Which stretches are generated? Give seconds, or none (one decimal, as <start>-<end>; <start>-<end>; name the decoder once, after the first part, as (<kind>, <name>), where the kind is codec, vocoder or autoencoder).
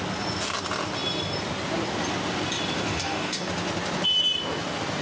2.9-3.5 (codec, DAC)